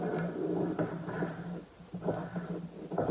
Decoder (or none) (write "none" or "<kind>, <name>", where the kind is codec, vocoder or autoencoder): none